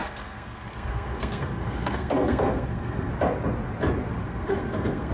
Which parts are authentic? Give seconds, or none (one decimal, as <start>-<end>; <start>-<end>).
3.1-4.2